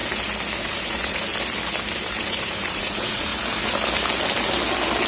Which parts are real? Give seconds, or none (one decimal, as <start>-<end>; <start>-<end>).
0.0-0.6; 1.3-2.2; 3.3-5.1